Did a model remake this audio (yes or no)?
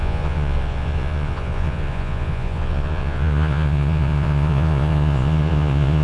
yes